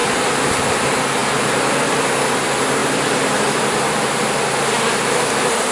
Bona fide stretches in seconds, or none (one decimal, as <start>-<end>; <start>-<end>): 0.0-5.7